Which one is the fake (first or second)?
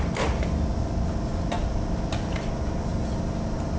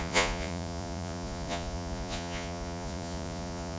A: second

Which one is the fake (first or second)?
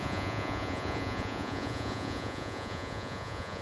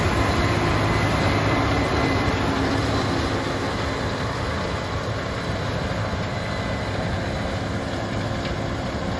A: first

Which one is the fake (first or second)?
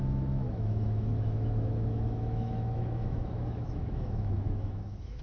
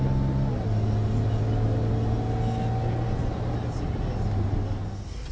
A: first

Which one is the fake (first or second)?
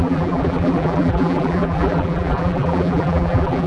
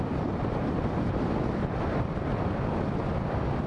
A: first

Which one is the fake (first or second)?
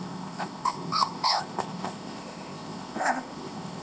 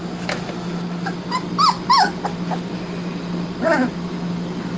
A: first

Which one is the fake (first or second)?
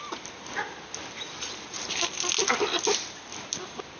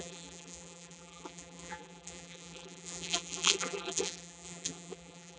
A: second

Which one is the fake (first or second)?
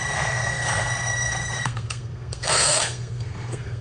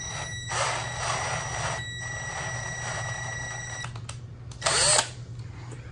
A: first